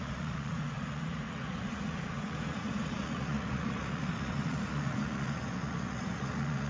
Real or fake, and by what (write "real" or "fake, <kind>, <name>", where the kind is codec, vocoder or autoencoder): fake, vocoder, Vocos